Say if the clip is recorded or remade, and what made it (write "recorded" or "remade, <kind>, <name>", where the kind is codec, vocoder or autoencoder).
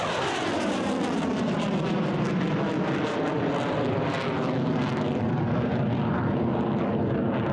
remade, vocoder, BigVGAN v2